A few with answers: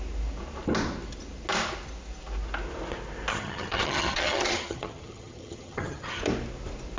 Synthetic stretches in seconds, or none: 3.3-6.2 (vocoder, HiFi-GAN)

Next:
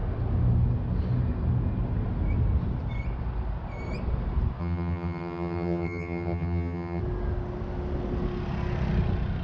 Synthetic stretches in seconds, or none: 4.6-7.0 (vocoder, HiFi-GAN)

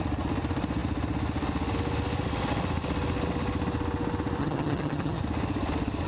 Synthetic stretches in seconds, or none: 4.4-5.2 (vocoder, HiFi-GAN)

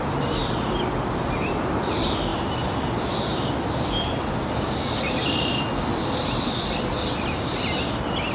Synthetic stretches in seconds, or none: none

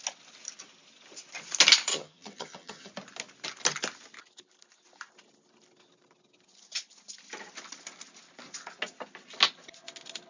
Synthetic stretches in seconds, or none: 1.9-2.9 (vocoder, HiFi-GAN)

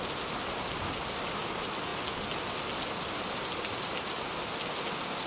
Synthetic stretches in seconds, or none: none

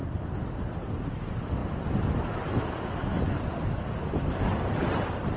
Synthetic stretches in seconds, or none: none

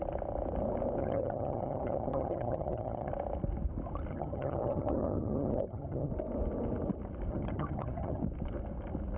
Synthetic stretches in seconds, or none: 1.0-3.1 (vocoder, HiFi-GAN); 4.1-6.1; 7.3-8.2